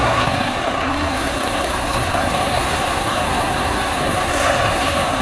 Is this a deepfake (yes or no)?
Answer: yes